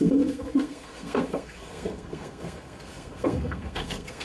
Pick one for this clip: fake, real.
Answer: fake